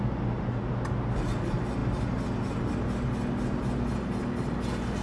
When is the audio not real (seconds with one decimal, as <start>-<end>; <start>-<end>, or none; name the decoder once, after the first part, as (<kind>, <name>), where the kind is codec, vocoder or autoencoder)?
none